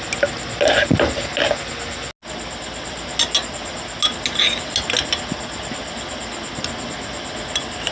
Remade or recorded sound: recorded